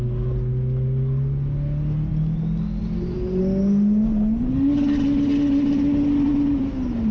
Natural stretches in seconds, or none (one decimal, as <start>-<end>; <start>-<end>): 0.0-2.8; 3.4-7.1